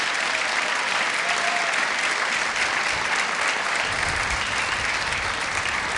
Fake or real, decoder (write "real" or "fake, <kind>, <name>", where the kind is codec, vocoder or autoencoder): real